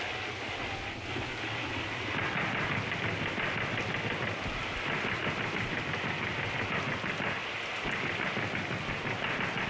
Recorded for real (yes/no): yes